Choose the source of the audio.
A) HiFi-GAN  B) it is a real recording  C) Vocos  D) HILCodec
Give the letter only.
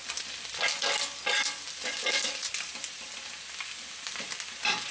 B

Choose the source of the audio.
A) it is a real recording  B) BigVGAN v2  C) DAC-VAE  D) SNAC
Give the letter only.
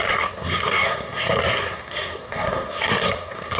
D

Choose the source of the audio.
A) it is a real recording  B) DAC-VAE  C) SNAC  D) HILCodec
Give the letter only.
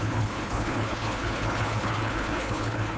D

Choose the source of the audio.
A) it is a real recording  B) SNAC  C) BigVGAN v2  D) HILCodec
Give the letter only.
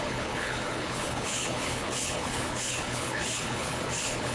D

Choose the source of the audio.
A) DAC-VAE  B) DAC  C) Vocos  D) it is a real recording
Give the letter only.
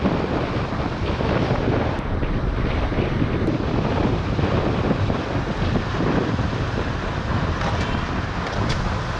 D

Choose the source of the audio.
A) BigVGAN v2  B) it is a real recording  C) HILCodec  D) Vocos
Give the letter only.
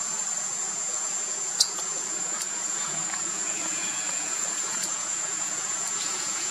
D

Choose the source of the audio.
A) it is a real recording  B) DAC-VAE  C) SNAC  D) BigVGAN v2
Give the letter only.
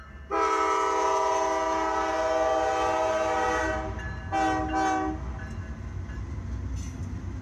A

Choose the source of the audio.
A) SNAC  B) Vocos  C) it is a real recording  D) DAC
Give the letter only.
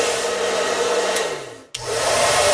C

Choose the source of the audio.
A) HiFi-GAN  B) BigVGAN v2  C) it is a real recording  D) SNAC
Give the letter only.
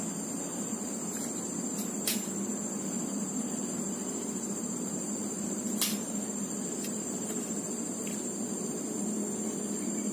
B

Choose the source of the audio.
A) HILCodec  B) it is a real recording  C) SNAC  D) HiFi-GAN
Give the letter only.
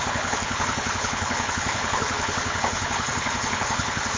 A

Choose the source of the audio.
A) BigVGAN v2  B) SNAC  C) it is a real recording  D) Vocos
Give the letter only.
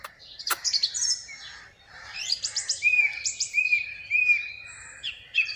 A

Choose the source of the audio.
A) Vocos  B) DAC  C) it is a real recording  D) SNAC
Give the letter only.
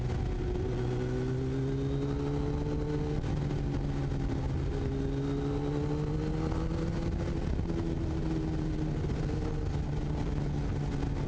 C